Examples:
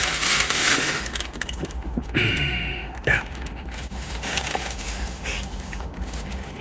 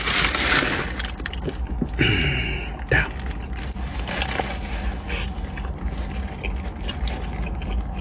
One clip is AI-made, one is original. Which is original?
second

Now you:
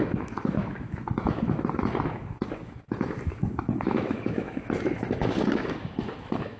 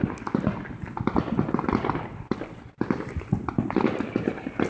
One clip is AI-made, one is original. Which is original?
second